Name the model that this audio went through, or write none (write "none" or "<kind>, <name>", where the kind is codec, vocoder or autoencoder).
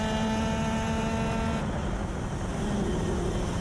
none